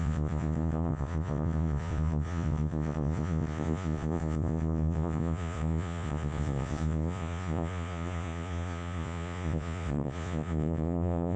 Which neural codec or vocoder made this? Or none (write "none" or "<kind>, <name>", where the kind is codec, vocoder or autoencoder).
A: vocoder, Vocos